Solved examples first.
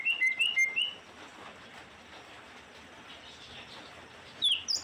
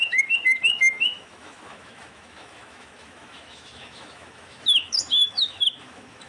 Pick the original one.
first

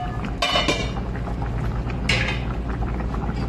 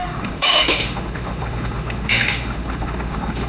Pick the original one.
first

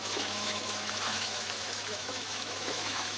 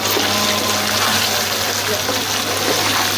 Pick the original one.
second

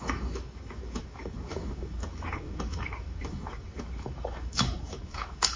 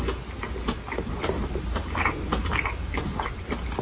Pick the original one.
second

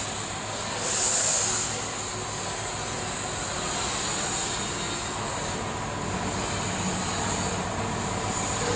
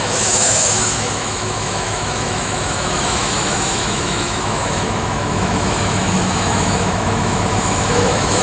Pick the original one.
first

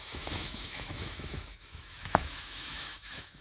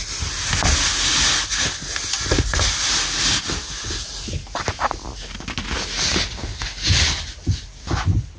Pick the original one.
second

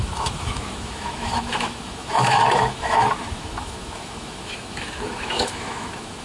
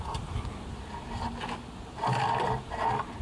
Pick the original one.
second